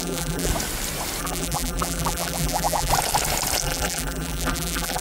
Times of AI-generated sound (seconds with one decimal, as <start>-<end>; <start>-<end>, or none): 0.0-0.5; 1.2-2.9; 3.6-5.0